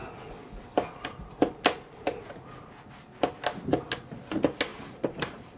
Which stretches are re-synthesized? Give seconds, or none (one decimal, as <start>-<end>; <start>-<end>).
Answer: 4.7-5.6